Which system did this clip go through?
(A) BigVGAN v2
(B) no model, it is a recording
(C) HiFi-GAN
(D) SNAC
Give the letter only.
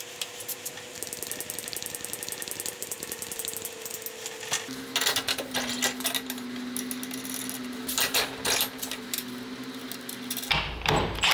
B